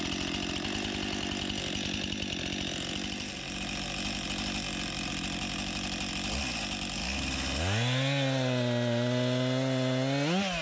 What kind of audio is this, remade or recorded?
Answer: recorded